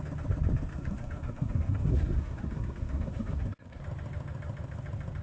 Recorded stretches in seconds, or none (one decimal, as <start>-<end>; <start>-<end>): 0.0-0.7; 3.8-5.2